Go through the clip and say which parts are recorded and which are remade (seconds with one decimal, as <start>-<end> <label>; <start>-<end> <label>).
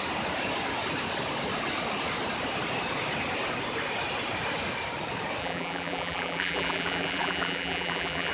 0.0-5.4 recorded; 5.4-8.3 remade